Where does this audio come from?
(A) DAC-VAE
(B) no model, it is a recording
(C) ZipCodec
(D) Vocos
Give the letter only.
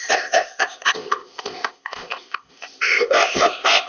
C